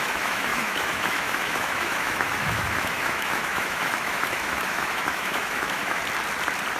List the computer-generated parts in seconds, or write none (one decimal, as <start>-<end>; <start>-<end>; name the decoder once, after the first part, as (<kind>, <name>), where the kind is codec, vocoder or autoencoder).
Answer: 0.0-6.0 (autoencoder, DAC-VAE)